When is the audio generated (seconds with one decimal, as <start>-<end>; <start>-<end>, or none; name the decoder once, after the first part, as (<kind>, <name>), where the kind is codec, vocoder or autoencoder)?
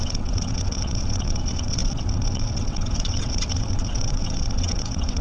0.0-5.2 (vocoder, WaveNeXt)